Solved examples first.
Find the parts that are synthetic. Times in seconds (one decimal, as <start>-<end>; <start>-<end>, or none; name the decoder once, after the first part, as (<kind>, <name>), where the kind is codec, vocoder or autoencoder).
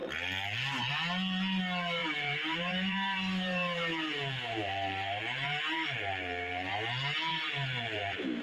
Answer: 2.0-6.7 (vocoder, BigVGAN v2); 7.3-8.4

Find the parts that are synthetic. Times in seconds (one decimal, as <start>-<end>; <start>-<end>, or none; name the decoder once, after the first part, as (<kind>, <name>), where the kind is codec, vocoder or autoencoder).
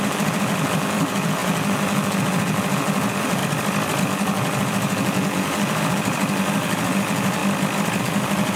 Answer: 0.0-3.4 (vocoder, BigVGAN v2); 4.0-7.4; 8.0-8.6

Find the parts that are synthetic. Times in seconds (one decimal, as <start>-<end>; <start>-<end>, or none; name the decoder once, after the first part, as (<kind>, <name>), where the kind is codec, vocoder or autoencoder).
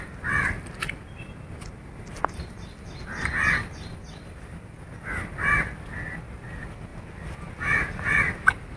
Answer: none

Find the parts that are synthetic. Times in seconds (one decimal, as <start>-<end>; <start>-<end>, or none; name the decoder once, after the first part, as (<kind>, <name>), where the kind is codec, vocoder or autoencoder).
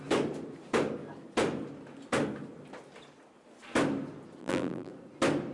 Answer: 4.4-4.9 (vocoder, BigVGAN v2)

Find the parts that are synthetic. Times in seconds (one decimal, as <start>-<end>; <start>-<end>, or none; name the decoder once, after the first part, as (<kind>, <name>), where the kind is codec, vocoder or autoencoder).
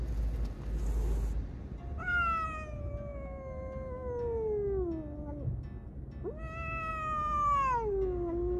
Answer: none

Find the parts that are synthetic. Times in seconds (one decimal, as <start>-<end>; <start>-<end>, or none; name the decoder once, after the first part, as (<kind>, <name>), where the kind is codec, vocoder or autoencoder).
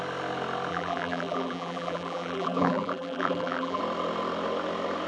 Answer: 0.7-3.8 (vocoder, BigVGAN v2)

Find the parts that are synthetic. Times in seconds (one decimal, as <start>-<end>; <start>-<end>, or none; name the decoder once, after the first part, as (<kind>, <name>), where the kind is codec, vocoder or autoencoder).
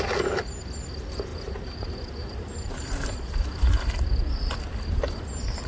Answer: 1.3-3.9 (vocoder, BigVGAN v2)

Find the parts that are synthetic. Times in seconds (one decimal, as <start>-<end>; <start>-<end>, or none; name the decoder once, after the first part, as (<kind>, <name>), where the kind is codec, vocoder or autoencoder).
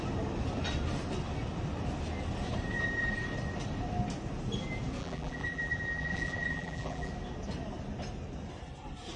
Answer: 5.0-7.1 (vocoder, BigVGAN v2)